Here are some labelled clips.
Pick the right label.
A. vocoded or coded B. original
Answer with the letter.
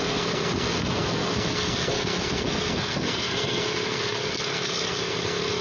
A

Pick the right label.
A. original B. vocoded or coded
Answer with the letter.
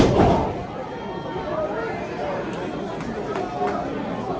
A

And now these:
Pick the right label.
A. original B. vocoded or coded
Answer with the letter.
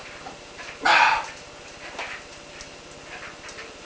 A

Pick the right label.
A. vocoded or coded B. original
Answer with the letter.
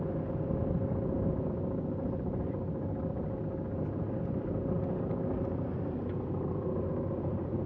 B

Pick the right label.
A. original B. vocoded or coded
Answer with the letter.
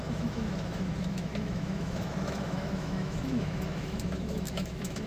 B